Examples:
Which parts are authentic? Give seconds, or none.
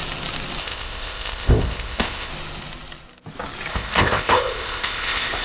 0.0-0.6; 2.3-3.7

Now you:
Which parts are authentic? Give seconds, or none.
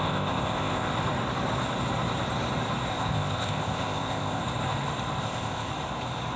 0.9-2.9; 4.4-5.2; 5.7-6.4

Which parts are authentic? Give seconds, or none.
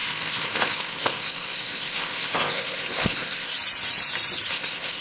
3.5-4.5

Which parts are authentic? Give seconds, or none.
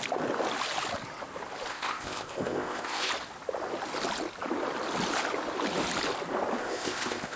0.0-1.7; 3.1-6.6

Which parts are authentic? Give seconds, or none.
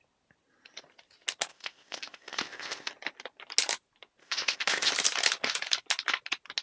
0.0-1.5; 2.9-4.2; 4.9-6.6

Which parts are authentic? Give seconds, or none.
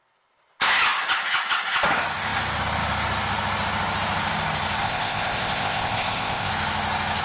0.0-4.8; 6.5-7.2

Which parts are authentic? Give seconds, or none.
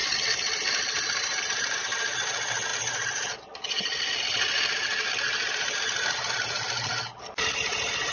0.0-8.1